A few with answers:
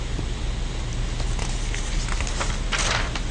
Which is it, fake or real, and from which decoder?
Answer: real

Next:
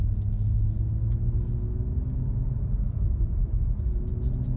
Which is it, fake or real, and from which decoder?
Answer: real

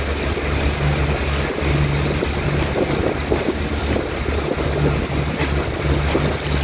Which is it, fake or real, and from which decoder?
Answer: real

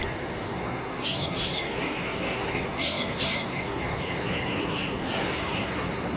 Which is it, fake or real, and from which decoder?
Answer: fake, codec, SNAC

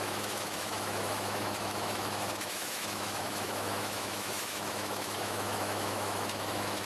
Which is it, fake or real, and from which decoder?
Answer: fake, autoencoder, DAC-VAE